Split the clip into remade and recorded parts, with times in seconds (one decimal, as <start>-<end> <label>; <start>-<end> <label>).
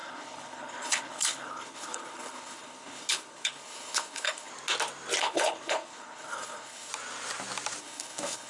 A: 0.0-4.5 remade; 4.5-5.2 recorded; 5.2-6.9 remade; 6.9-7.8 recorded; 7.8-8.5 remade